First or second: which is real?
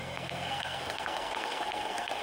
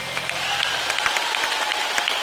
second